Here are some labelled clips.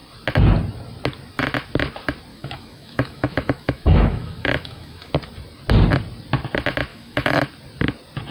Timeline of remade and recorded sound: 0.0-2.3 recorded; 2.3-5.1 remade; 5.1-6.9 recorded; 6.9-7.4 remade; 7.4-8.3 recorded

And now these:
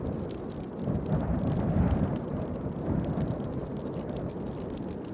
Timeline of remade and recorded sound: 0.0-5.1 recorded

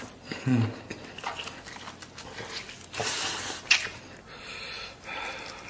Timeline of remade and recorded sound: 0.0-5.7 recorded

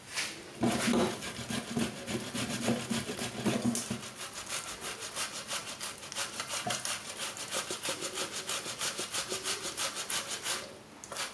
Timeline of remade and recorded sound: 0.0-11.3 recorded

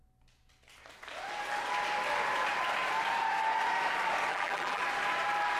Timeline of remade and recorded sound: 0.0-4.3 recorded; 4.3-4.8 remade; 4.8-5.6 recorded

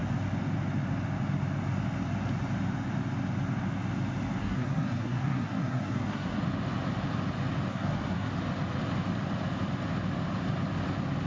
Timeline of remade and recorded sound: 0.0-4.4 recorded; 4.4-6.4 remade; 6.4-7.7 recorded; 7.7-8.3 remade; 8.3-11.3 recorded